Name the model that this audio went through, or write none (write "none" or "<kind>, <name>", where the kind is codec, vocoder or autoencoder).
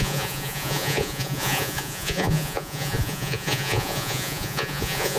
vocoder, Vocos